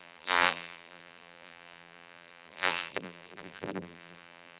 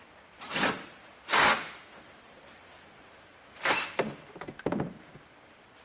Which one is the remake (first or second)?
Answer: first